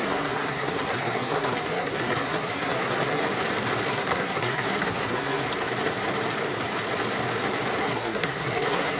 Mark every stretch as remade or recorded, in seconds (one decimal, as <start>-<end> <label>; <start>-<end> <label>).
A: 0.0-3.2 remade; 3.2-3.9 recorded; 3.9-5.4 remade; 5.4-7.8 recorded; 7.8-9.0 remade